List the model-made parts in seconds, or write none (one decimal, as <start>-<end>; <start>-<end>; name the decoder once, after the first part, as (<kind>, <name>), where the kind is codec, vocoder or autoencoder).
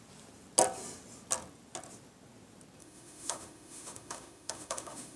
2.8-5.2 (autoencoder, DAC-VAE)